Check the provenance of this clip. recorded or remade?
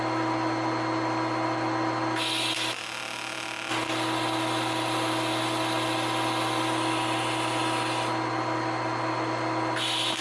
recorded